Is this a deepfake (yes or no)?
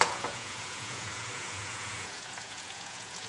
yes